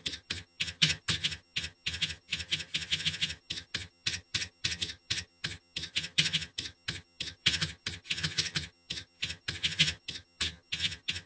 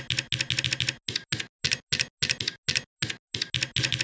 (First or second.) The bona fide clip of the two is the second